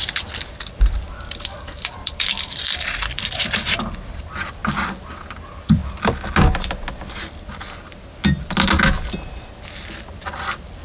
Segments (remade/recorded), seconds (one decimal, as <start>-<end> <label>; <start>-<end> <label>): 0.0-4.6 remade; 4.6-5.3 recorded; 5.3-5.8 remade; 5.8-10.1 recorded; 10.1-10.8 remade